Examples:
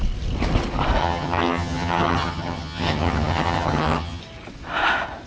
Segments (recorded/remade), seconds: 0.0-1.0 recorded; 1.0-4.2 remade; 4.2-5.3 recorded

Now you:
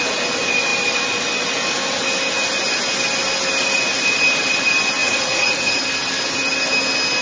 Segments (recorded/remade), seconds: 0.0-5.0 recorded; 5.0-5.8 remade; 5.8-7.2 recorded

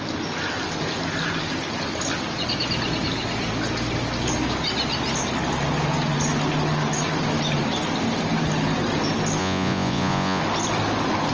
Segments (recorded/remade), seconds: 0.0-9.4 recorded; 9.4-10.4 remade; 10.4-11.3 recorded

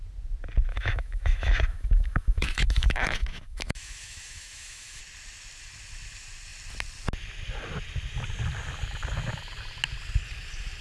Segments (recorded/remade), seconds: 0.0-0.7 recorded; 0.7-5.0 remade; 5.0-10.8 recorded

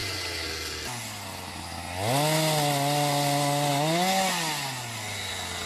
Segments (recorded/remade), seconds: 0.0-5.7 recorded

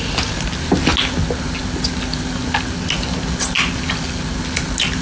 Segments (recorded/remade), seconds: 0.0-5.0 recorded